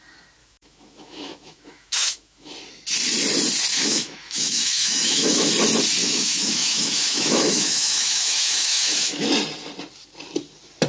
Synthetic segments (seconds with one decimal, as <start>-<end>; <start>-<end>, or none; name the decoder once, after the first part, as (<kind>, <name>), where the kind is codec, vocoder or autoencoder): 0.4-2.5 (autoencoder, DAC-VAE); 3.7-5.5; 6.0-9.3